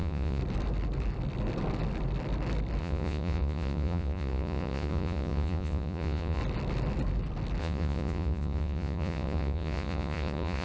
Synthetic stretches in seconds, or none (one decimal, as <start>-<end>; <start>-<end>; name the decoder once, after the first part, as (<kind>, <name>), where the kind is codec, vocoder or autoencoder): 0.0-0.4 (vocoder, Vocos); 2.8-6.4; 7.6-10.6

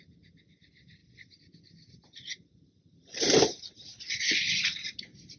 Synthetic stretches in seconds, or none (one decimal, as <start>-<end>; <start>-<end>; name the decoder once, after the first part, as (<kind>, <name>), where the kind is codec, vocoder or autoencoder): none

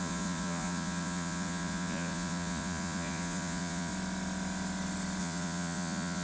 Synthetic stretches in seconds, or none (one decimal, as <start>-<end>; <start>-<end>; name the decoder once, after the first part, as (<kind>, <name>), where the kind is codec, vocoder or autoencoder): 0.0-3.9 (vocoder, Vocos); 5.2-6.2

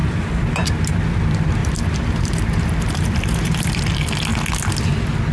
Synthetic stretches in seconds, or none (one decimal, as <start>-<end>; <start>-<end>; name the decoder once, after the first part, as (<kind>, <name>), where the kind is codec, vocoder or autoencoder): 0.0-0.7 (vocoder, BigVGAN v2); 1.6-3.7